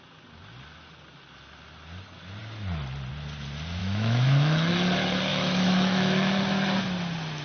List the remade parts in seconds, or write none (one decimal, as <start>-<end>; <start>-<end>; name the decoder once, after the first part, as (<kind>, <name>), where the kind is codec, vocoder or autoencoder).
3.8-4.7 (autoencoder, DAC-VAE); 5.3-6.4